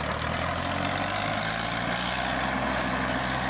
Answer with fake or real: real